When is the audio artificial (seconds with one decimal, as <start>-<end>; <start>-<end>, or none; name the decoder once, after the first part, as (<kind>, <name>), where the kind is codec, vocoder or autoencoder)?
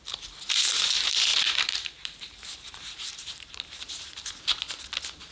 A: 1.3-4.1 (vocoder, BigVGAN v2)